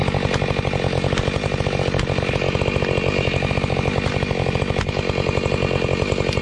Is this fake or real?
real